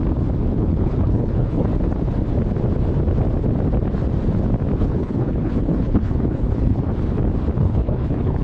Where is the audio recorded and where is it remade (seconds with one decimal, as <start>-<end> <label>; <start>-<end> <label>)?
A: 0.0-0.6 recorded; 0.6-1.7 remade; 1.7-4.8 recorded; 4.8-6.9 remade; 6.9-7.6 recorded; 7.6-8.4 remade